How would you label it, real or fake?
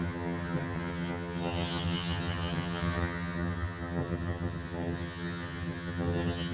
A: fake